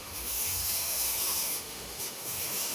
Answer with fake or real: fake